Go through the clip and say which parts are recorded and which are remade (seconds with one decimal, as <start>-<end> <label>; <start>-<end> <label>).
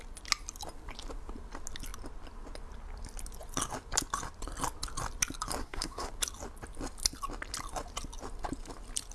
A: 0.0-5.6 recorded; 5.6-6.1 remade; 6.1-9.1 recorded